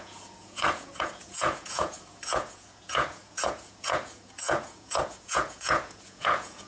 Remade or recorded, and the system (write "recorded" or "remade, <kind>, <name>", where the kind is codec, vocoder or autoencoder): remade, vocoder, Vocos